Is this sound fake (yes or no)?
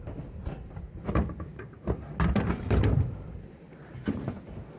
no